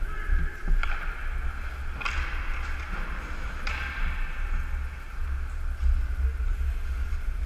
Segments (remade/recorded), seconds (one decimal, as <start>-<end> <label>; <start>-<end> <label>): 0.0-7.5 recorded